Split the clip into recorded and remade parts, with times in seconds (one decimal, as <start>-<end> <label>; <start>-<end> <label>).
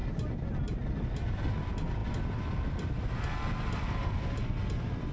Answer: 0.0-5.1 recorded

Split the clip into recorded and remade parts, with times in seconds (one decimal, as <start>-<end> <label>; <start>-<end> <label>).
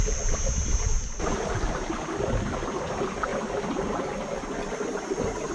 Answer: 0.0-0.6 recorded; 0.6-1.9 remade; 1.9-5.5 recorded